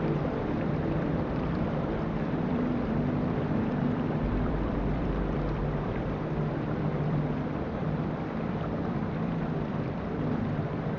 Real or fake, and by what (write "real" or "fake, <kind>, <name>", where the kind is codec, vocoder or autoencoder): fake, vocoder, BigVGAN v2